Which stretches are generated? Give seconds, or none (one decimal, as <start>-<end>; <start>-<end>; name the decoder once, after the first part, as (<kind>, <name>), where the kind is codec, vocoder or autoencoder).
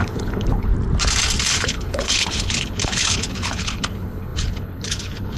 0.0-0.7 (codec, HILCodec); 1.4-5.4